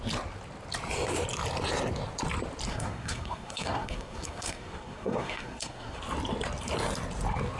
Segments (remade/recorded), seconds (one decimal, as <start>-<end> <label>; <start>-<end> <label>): 0.0-2.7 recorded; 2.7-6.0 remade; 6.0-7.6 recorded